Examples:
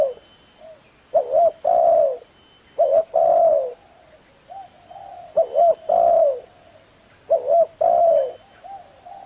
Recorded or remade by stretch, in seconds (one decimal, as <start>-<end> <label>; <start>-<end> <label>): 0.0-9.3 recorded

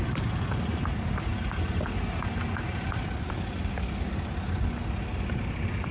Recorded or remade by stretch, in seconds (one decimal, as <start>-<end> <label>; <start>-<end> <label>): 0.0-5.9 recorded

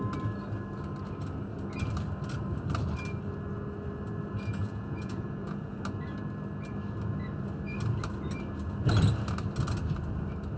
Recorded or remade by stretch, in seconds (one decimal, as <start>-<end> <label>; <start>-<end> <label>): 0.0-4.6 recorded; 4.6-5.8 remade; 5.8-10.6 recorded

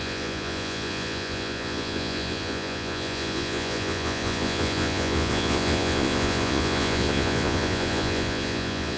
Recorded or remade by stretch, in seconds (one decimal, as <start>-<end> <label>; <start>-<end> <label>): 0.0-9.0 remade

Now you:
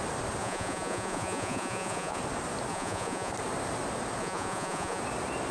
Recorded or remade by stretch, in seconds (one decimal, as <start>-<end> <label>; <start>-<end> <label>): 0.0-0.4 recorded; 0.4-2.2 remade; 2.2-2.7 recorded; 2.7-3.3 remade; 3.3-4.2 recorded; 4.2-5.0 remade; 5.0-5.5 recorded